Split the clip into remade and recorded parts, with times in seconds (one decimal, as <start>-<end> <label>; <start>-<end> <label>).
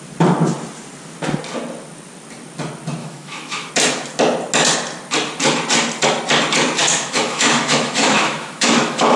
0.0-3.0 recorded; 3.0-3.7 remade; 3.7-6.8 recorded; 6.8-9.2 remade